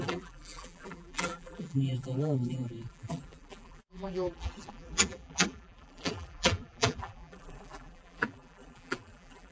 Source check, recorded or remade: remade